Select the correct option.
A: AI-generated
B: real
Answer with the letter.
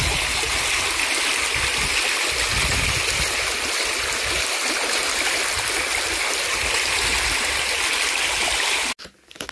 B